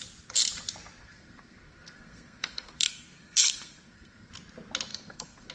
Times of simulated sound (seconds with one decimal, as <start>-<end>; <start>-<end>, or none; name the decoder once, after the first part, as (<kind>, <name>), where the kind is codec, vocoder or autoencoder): 1.0-4.3 (codec, SNAC); 4.9-5.5

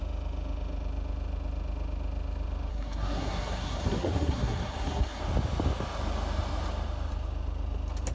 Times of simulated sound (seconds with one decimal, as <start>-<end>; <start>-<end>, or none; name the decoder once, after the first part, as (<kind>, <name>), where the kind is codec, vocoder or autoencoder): 2.7-5.2 (codec, SNAC)

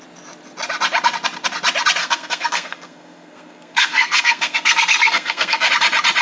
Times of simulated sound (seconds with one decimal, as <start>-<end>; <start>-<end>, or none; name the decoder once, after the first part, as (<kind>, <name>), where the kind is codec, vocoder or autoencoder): 2.0-5.7 (codec, SNAC)